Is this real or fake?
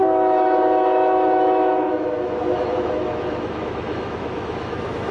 fake